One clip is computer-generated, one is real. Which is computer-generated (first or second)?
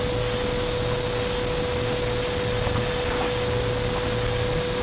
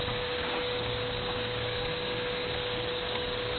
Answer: second